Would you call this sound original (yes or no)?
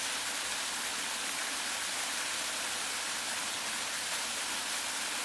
yes